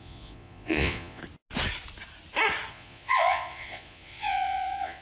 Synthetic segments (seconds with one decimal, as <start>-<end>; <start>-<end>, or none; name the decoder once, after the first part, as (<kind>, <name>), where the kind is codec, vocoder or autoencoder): 0.0-1.2 (vocoder, Vocos); 2.7-5.0